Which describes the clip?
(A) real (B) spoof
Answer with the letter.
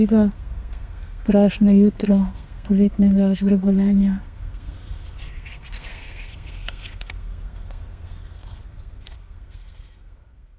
B